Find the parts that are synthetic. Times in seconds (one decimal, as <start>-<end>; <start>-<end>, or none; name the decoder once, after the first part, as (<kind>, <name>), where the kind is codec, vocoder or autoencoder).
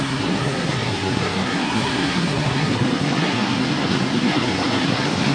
0.0-5.3 (codec, SNAC)